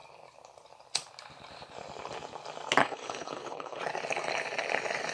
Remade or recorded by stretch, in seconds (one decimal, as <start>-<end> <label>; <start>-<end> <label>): 0.0-2.8 recorded; 2.8-3.8 remade; 3.8-5.1 recorded